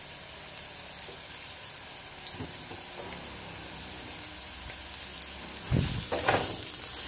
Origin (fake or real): real